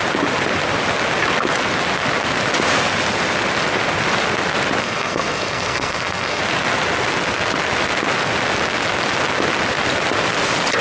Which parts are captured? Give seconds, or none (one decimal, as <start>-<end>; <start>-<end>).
0.0-4.8; 6.4-10.8